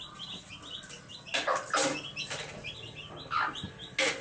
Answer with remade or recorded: recorded